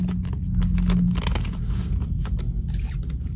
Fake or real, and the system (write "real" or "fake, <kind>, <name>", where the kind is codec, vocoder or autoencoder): real